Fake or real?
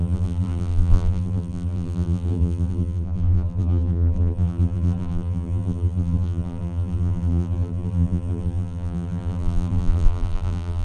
fake